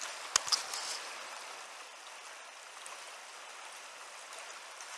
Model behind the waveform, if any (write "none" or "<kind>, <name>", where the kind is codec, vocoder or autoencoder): none